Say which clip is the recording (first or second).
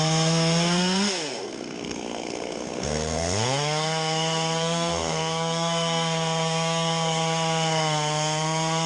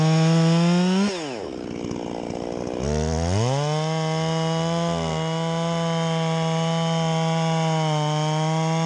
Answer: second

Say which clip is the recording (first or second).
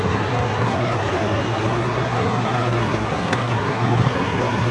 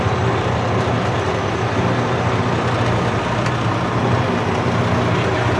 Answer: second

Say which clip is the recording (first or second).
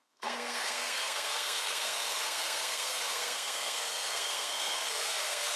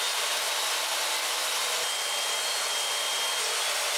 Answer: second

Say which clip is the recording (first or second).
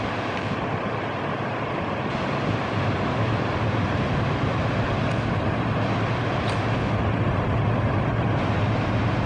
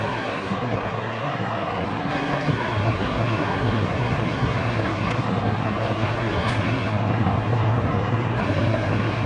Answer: first